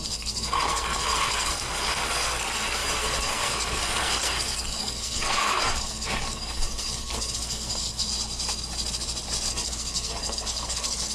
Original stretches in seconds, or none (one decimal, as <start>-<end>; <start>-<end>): 8.1-9.5